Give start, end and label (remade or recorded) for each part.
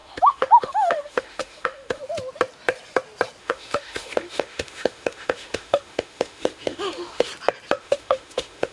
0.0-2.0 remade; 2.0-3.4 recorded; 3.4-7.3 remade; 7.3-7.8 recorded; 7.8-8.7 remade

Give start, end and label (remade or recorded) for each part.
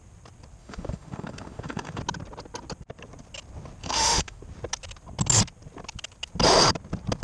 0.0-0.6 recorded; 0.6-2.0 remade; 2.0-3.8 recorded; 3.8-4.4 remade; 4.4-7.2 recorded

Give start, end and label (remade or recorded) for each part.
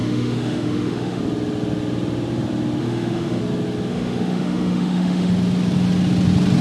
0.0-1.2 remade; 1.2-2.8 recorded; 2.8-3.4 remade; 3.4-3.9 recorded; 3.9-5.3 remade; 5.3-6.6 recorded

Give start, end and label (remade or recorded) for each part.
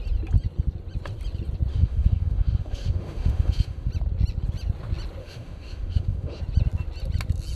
0.0-1.7 recorded; 1.7-3.9 remade; 3.9-5.2 recorded; 5.2-6.4 remade; 6.4-7.6 recorded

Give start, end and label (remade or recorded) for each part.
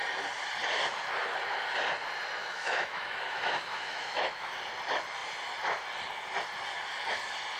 0.0-2.4 recorded; 2.4-4.6 remade; 4.6-7.6 recorded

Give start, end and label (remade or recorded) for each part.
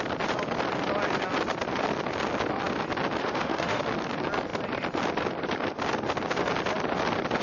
0.0-3.2 recorded; 3.2-3.8 remade; 3.8-7.4 recorded